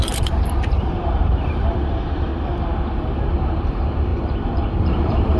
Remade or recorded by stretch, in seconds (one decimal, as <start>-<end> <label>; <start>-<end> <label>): 0.0-2.3 remade; 2.3-3.3 recorded; 3.3-5.4 remade